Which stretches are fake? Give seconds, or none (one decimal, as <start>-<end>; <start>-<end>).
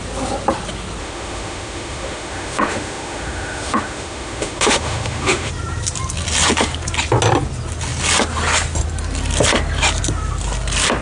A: 1.0-5.5